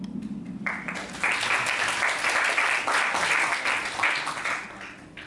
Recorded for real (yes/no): yes